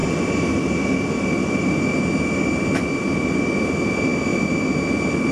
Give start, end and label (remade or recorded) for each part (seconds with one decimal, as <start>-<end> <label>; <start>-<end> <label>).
0.0-5.3 recorded